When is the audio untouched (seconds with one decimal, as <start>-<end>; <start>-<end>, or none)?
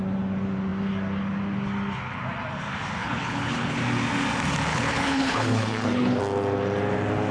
0.0-3.0; 3.8-4.7; 6.2-7.3